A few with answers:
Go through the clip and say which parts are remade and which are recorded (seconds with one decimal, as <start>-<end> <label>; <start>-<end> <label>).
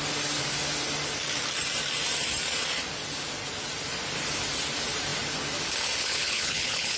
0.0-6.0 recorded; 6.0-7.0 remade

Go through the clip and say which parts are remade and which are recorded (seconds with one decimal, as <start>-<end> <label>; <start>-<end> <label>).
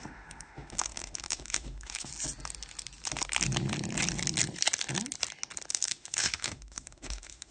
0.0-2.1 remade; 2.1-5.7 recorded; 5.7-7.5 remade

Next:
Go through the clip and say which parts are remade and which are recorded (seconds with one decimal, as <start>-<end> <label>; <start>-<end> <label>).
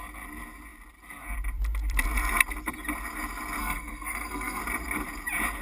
0.0-3.6 recorded; 3.6-4.6 remade; 4.6-5.6 recorded